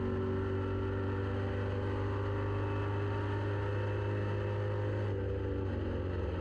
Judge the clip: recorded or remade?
recorded